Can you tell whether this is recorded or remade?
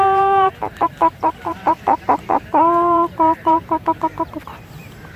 remade